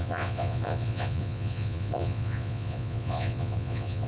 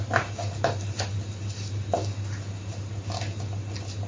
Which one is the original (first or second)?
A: second